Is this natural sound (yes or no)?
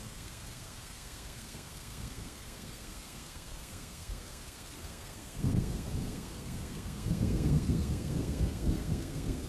no